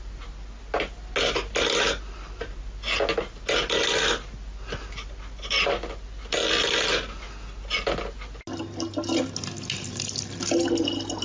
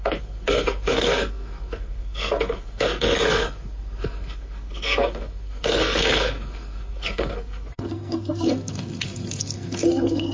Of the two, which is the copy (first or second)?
second